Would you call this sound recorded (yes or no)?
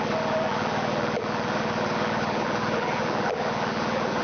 no